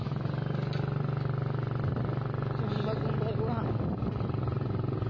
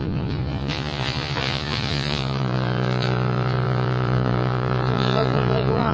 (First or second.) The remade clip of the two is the second